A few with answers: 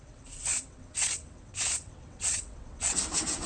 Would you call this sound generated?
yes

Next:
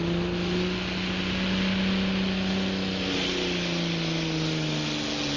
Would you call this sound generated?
no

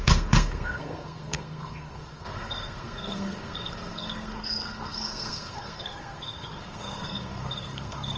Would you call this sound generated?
yes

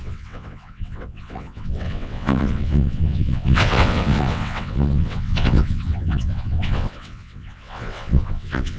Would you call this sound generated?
yes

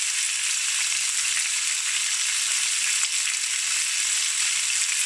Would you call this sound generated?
no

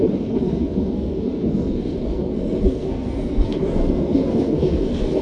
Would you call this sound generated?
yes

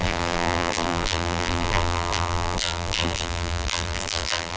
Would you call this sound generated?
yes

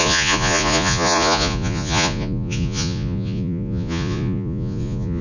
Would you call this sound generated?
yes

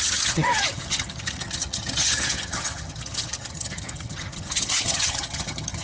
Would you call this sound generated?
yes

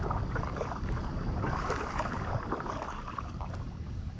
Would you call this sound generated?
yes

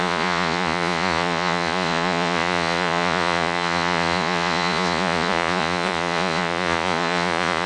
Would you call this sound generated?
yes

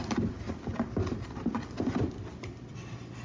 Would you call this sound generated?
no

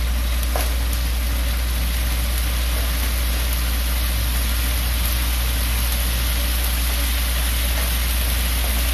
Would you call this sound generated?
no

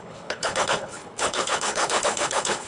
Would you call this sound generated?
yes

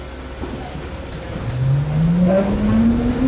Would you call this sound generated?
no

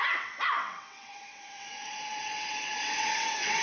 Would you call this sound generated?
yes